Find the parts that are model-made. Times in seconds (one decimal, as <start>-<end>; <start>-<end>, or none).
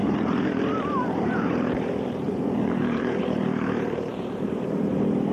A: 0.0-5.3